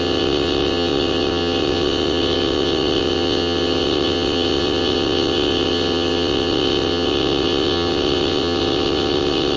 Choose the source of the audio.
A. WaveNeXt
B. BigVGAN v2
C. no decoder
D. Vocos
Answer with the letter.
A